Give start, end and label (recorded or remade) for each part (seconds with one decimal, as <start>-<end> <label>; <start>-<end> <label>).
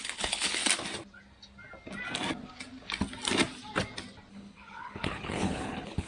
0.0-0.6 remade; 0.6-4.3 recorded; 4.3-6.1 remade